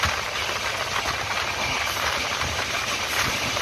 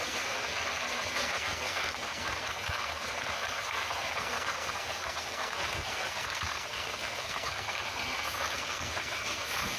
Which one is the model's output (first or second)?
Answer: second